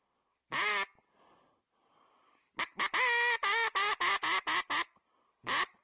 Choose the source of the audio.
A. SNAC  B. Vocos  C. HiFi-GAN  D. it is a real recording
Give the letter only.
D